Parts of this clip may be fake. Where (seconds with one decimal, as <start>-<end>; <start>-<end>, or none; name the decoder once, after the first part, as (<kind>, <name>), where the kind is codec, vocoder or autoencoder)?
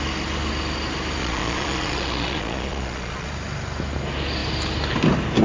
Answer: 1.2-3.3 (vocoder, Vocos)